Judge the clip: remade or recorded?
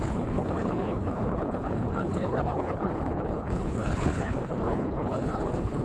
remade